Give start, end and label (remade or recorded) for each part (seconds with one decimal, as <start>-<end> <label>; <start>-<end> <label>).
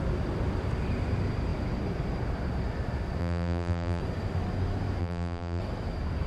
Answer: 0.0-3.2 recorded; 3.2-4.0 remade; 4.0-5.0 recorded; 5.0-5.6 remade; 5.6-6.3 recorded